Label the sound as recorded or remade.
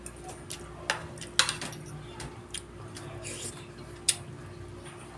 recorded